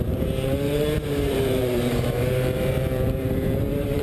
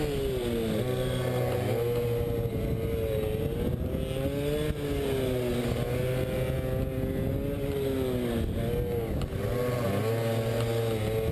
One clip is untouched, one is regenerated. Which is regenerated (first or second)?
first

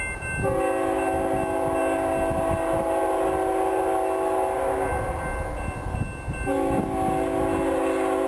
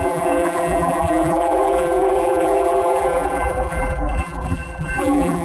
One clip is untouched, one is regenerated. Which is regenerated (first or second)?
second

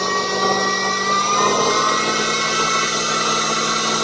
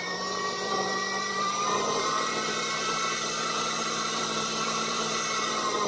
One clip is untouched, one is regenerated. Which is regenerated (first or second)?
second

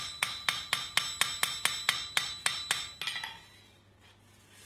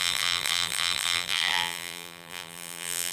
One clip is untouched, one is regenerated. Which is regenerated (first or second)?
second